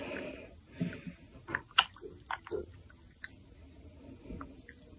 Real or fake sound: real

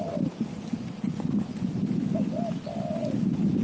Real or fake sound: real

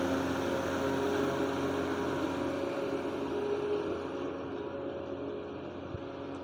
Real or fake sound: real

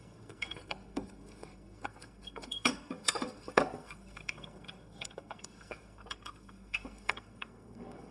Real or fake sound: fake